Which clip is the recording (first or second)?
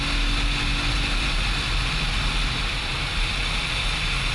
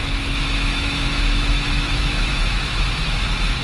first